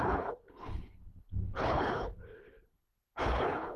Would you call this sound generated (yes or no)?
yes